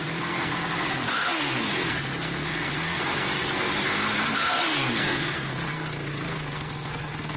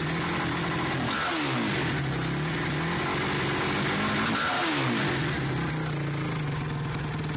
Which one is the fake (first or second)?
first